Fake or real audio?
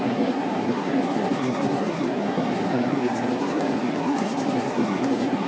fake